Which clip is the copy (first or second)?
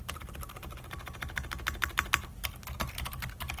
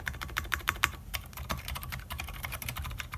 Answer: second